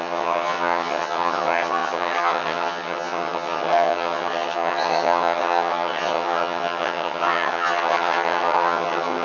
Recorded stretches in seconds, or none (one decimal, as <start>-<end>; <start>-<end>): none